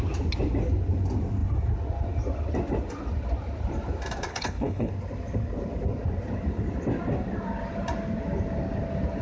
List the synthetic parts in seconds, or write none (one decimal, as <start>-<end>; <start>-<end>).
4.3-4.9